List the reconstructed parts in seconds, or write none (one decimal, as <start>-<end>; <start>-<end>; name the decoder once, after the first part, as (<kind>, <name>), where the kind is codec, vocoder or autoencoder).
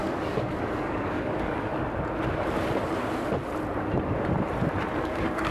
0.0-1.7 (codec, DAC); 5.0-5.5